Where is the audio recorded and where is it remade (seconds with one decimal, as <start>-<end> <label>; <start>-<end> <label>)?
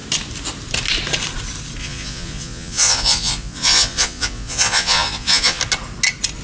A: 0.0-1.8 recorded; 1.8-5.6 remade; 5.6-6.4 recorded